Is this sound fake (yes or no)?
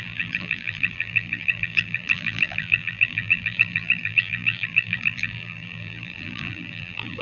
yes